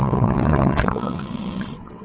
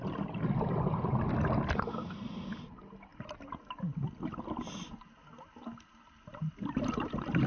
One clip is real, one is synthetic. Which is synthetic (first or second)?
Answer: first